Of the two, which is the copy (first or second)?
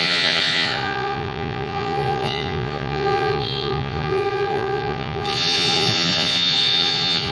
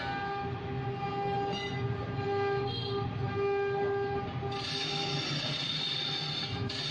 first